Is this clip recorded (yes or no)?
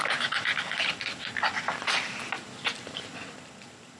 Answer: yes